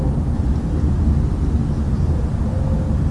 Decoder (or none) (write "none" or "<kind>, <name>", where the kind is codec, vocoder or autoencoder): none